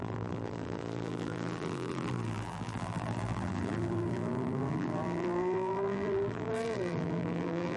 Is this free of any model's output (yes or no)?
no